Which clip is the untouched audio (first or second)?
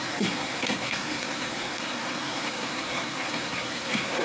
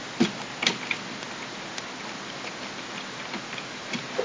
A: second